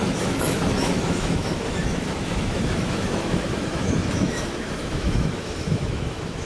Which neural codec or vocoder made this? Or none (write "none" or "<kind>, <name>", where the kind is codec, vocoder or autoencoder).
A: autoencoder, DAC-VAE